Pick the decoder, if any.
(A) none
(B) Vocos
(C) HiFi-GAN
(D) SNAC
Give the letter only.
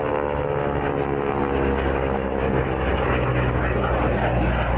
A